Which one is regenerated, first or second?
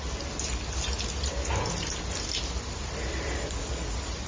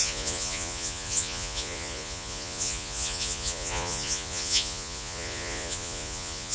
second